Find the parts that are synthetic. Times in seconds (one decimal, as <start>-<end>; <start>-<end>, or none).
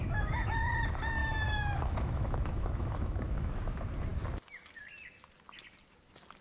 0.0-0.7; 1.2-3.5